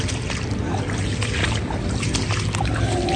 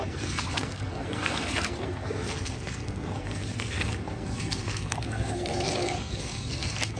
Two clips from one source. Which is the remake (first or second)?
second